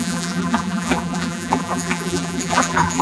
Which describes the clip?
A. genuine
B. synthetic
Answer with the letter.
B